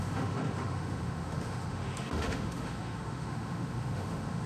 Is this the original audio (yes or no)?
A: no